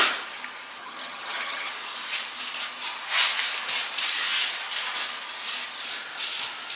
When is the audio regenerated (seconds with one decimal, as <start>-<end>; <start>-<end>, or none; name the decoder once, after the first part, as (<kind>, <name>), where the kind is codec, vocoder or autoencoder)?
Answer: 0.8-1.7 (vocoder, HiFi-GAN)